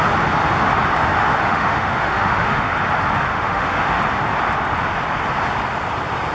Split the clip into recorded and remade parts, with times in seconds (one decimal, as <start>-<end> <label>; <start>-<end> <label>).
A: 0.0-1.4 recorded; 1.4-2.7 remade; 2.7-3.3 recorded; 3.3-4.0 remade; 4.0-6.3 recorded

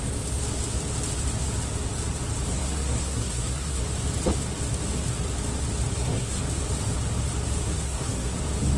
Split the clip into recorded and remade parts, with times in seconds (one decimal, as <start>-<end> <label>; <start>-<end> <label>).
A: 0.0-2.5 recorded; 2.5-3.8 remade; 3.8-5.9 recorded; 5.9-6.4 remade; 6.4-7.6 recorded; 7.6-8.4 remade; 8.4-8.8 recorded

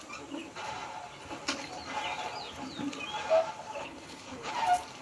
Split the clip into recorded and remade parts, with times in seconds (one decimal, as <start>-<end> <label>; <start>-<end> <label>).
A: 0.0-3.8 recorded; 3.8-4.5 remade; 4.5-5.0 recorded

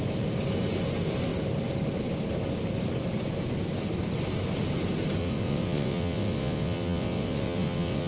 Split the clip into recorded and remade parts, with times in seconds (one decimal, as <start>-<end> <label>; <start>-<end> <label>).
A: 0.0-5.2 recorded; 5.2-8.1 remade

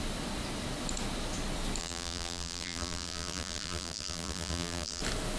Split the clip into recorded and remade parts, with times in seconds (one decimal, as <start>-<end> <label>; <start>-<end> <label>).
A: 0.0-1.8 recorded; 1.8-5.0 remade; 5.0-5.4 recorded

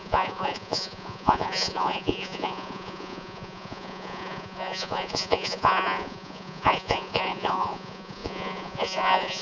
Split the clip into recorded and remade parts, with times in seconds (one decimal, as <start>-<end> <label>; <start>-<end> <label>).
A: 0.0-9.4 remade

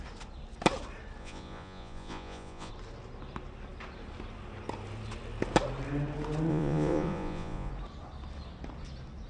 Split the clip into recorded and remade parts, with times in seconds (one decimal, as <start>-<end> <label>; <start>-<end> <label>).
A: 0.0-1.2 recorded; 1.2-2.7 remade; 2.7-6.5 recorded; 6.5-7.7 remade; 7.7-9.3 recorded